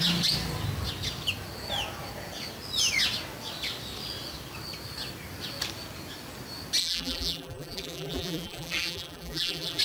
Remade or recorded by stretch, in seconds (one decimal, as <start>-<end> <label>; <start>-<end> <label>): 0.0-6.8 recorded; 6.8-9.8 remade